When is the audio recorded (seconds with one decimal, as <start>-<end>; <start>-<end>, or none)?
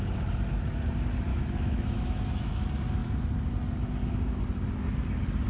0.0-1.3; 2.6-5.5